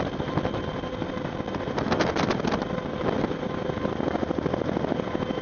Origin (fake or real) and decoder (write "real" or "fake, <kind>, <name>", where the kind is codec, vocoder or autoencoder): real